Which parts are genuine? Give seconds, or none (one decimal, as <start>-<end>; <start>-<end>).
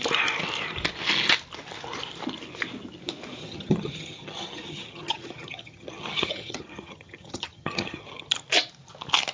0.0-3.4; 8.2-9.3